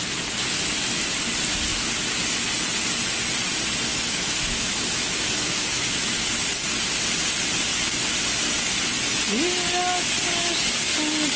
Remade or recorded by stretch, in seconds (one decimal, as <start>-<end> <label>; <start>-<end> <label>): 0.0-3.9 recorded; 3.9-6.3 remade; 6.3-11.4 recorded